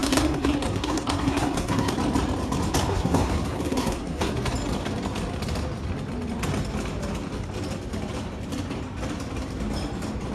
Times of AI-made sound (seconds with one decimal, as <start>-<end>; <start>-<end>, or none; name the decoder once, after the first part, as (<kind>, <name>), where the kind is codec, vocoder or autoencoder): 0.0-1.9 (codec, SNAC); 2.9-4.3